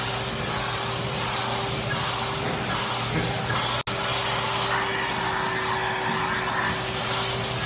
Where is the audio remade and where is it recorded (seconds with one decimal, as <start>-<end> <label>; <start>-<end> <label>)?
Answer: 0.0-7.7 recorded